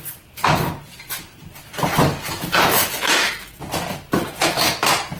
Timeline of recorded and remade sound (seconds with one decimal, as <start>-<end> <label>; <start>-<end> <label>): 0.0-3.0 recorded; 3.0-3.6 remade; 3.6-4.2 recorded; 4.2-4.7 remade; 4.7-5.2 recorded